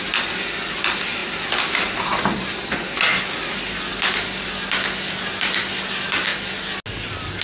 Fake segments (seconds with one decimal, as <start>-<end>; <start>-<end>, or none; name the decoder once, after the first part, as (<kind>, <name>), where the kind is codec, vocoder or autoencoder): none